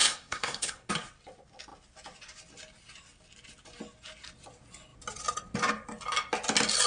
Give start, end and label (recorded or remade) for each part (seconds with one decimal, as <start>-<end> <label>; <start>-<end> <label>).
0.0-0.9 remade; 0.9-6.9 recorded